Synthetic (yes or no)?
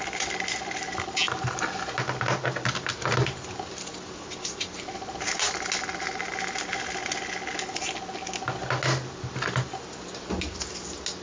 no